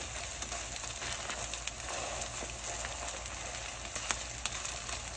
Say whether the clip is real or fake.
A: real